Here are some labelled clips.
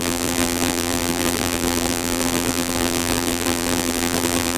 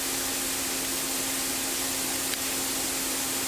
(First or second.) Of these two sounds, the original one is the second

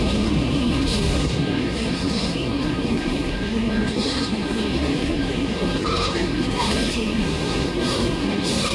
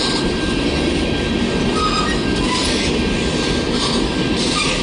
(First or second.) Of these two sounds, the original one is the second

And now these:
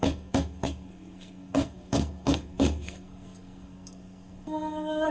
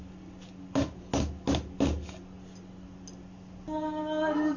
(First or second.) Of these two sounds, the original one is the second